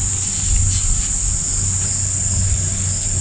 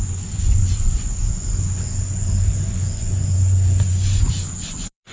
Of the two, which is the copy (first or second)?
second